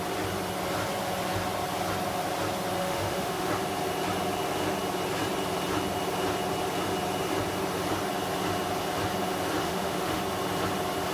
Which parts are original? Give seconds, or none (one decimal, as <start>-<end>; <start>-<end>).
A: 0.0-2.8; 3.5-9.6; 10.2-11.1